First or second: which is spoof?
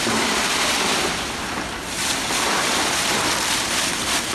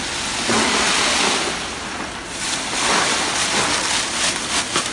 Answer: first